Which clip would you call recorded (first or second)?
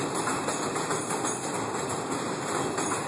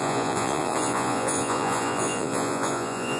first